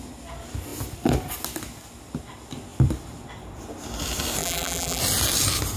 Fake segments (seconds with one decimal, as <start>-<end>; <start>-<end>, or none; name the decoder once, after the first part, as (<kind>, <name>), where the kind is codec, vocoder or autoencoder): 4.4-5.0 (vocoder, BigVGAN v2)